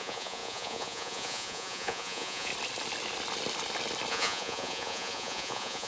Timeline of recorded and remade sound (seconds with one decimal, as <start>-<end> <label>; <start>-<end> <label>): 0.0-2.5 remade; 2.5-4.1 recorded; 4.1-5.9 remade